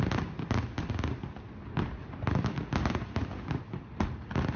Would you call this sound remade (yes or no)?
no